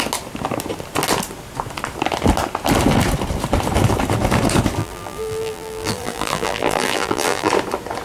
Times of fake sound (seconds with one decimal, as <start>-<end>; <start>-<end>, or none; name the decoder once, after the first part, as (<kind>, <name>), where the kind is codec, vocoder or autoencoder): 4.8-7.5 (vocoder, BigVGAN v2)